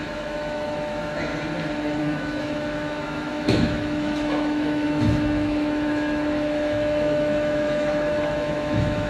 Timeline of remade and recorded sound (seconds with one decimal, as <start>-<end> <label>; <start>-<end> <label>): 0.0-1.3 remade; 1.3-2.0 recorded; 2.0-9.1 remade